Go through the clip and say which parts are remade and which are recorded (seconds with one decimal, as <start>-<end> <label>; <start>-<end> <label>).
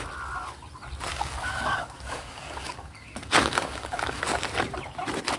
0.0-1.1 recorded; 1.1-4.2 remade; 4.2-5.4 recorded